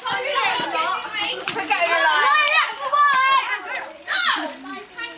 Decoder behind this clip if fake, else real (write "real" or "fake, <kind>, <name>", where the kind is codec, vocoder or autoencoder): real